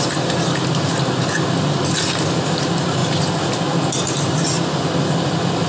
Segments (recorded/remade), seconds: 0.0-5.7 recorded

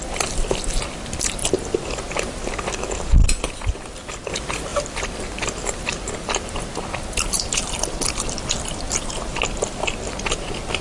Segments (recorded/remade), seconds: 0.0-1.4 recorded; 1.4-2.1 remade; 2.1-3.2 recorded; 3.2-4.3 remade; 4.3-4.7 recorded; 4.7-6.0 remade; 6.0-10.8 recorded

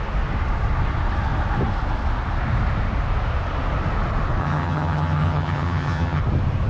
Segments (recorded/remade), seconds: 0.0-4.4 recorded; 4.4-6.2 remade; 6.2-6.7 recorded